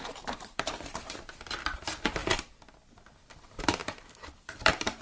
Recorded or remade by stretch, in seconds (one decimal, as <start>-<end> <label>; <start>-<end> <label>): 0.0-2.2 remade; 2.2-3.1 recorded; 3.1-5.0 remade